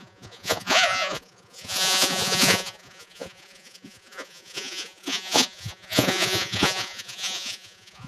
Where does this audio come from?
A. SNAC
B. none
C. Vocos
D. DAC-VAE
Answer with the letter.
C